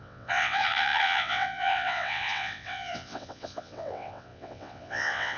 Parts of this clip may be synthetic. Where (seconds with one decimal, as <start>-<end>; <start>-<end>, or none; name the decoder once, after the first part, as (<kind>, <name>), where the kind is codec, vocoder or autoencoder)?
0.0-5.4 (vocoder, WaveNeXt)